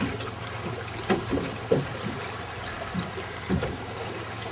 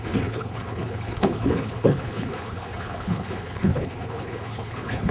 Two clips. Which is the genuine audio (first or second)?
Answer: first